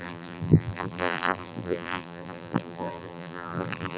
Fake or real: fake